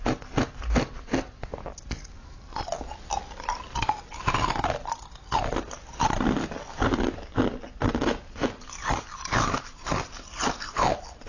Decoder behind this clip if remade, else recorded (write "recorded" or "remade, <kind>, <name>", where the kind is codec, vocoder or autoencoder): recorded